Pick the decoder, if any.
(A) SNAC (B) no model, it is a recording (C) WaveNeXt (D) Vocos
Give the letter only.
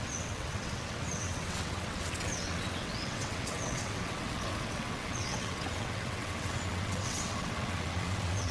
C